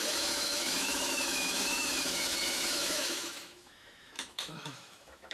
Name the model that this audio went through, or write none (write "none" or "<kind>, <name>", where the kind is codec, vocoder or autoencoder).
autoencoder, DAC-VAE